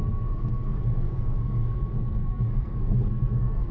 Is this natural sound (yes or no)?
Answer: no